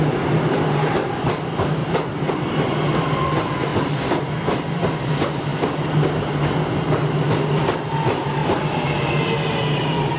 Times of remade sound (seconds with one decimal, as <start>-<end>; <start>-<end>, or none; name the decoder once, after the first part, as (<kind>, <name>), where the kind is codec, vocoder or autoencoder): 1.8-2.4 (vocoder, BigVGAN v2); 3.7-4.8